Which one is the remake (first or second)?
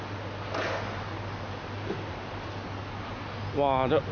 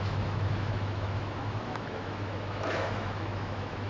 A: second